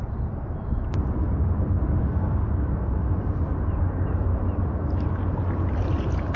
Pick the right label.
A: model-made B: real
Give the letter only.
B